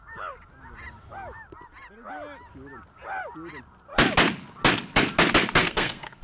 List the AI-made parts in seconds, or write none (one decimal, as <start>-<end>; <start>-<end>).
5.6-6.2